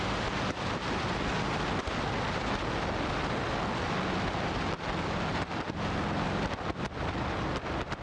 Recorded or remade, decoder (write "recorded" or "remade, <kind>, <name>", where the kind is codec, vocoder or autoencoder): recorded